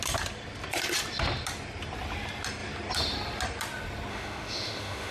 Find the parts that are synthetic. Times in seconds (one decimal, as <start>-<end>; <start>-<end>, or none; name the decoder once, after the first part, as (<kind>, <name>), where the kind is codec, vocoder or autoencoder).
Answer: 4.1-5.1 (autoencoder, DAC-VAE)